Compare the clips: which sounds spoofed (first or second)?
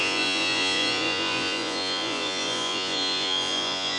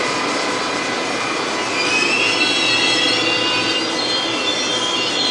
first